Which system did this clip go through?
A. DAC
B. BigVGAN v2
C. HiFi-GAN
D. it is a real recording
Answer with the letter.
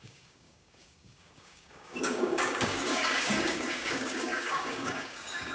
A